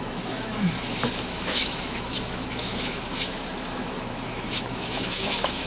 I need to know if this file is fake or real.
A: fake